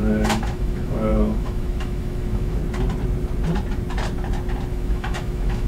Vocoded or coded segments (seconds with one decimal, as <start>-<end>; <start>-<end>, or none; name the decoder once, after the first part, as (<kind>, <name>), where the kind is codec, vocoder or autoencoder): 0.0-2.6 (autoencoder, DAC-VAE); 4.7-5.7